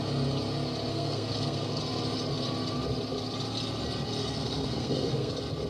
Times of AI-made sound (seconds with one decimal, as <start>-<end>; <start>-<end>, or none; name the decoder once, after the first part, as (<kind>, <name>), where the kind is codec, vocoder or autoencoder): 0.9-1.8 (codec, SNAC); 4.2-5.3